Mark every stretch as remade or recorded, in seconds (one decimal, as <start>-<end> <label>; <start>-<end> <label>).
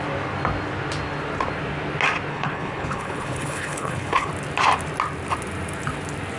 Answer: 0.0-2.3 recorded; 2.3-4.3 remade; 4.3-6.4 recorded